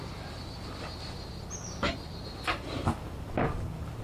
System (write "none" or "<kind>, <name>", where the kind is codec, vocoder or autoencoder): none